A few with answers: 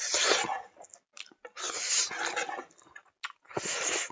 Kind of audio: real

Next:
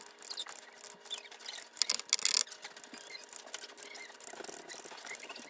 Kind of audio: real